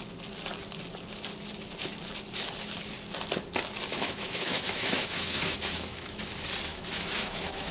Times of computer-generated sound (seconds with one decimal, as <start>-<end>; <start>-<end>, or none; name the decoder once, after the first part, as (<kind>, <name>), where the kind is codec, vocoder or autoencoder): 3.9-6.2 (autoencoder, DAC-VAE); 6.7-7.7